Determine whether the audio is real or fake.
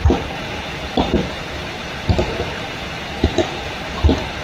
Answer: fake